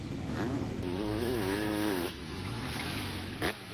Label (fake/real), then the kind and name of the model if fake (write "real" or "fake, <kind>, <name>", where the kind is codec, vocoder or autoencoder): fake, autoencoder, DAC-VAE